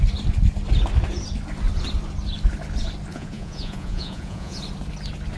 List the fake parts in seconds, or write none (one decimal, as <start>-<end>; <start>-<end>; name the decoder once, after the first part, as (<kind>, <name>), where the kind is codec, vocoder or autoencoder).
3.1-4.6 (vocoder, Vocos)

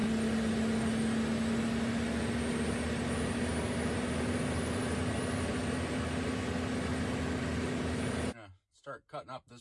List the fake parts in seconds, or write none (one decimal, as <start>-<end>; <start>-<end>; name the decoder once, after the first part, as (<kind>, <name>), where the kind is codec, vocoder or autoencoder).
none

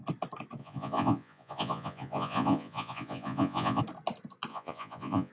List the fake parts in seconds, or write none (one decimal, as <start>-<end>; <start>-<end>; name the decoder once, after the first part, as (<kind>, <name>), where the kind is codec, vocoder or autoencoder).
0.6-3.8 (vocoder, Vocos); 4.5-5.3

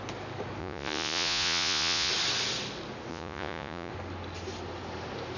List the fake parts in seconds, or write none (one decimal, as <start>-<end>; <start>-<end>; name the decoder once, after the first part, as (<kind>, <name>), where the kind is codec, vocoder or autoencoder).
0.6-2.1 (vocoder, Vocos); 3.1-3.9